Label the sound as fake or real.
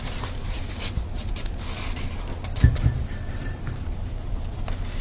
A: fake